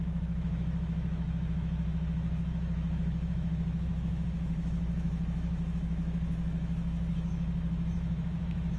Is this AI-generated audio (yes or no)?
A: yes